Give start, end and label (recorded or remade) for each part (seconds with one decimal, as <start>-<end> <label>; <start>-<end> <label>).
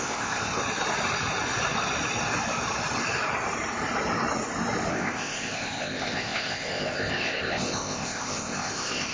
0.0-0.6 remade; 0.6-4.9 recorded; 4.9-9.1 remade